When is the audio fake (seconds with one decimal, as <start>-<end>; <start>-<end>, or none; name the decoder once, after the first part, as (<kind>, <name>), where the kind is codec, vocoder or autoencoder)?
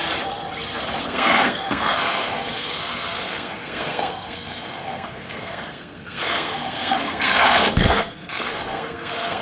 1.0-9.4 (codec, SNAC)